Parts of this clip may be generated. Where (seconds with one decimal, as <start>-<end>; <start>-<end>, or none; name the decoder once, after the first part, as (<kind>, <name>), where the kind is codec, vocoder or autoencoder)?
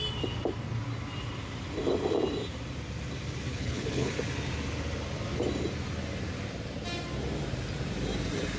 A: 3.5-4.1 (codec, HILCodec)